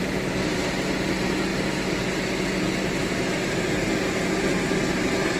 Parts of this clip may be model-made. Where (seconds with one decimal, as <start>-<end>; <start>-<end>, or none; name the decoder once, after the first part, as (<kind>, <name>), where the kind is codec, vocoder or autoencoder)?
none